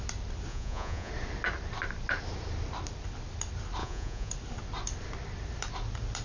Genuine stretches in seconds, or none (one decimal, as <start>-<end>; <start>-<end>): 0.0-0.5; 1.1-3.8; 4.3-6.2